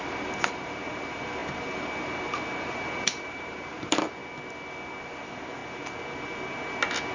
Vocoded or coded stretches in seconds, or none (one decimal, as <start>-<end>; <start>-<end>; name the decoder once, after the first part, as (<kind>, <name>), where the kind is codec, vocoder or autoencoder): 0.0-4.2 (vocoder, BigVGAN v2); 5.0-5.6